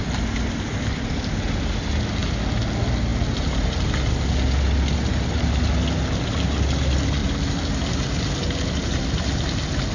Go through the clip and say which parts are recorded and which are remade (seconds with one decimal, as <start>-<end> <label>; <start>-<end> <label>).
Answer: 0.0-9.9 recorded